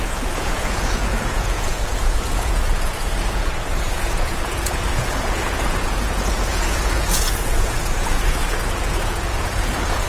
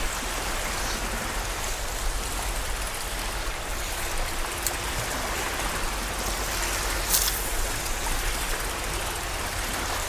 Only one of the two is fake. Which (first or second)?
first